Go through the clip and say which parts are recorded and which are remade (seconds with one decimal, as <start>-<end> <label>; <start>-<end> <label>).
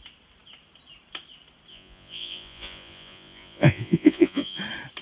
0.0-1.7 recorded; 1.7-4.6 remade; 4.6-5.0 recorded